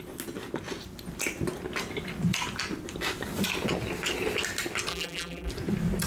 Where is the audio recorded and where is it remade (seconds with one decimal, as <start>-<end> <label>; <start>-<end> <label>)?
0.0-4.9 recorded; 4.9-5.5 remade; 5.5-6.1 recorded